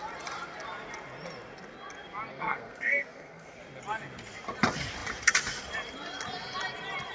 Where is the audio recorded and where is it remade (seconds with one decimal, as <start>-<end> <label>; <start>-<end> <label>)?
0.0-2.3 recorded; 2.3-3.6 remade; 3.6-7.1 recorded